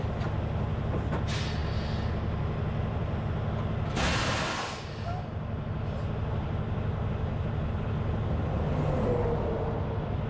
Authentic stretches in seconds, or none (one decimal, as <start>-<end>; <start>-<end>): 0.0-10.3